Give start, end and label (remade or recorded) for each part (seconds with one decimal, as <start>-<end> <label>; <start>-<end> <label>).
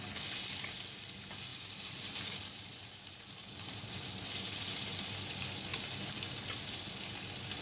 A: 0.0-1.5 recorded; 1.5-3.7 remade; 3.7-5.7 recorded; 5.7-6.2 remade; 6.2-7.6 recorded